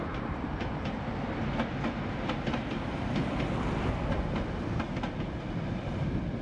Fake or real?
real